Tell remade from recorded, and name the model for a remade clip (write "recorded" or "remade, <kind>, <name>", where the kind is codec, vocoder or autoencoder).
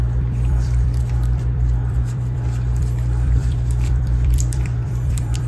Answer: remade, vocoder, BigVGAN v2